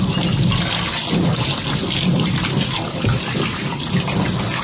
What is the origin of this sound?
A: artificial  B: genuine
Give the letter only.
B